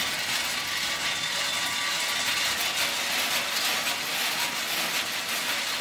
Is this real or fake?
real